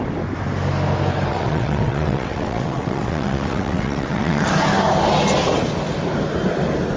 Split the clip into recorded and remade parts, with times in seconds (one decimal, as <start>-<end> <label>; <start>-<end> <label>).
0.0-1.3 recorded; 1.3-4.5 remade; 4.5-7.0 recorded